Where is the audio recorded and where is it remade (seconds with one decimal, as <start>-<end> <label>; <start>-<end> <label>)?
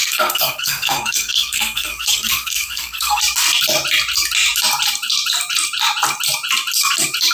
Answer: 0.0-3.2 remade; 3.2-7.3 recorded